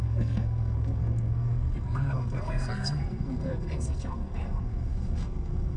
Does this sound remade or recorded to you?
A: remade